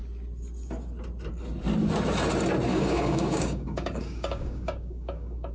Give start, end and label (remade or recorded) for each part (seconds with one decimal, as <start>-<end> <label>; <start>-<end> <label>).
0.0-2.7 recorded; 2.7-5.5 remade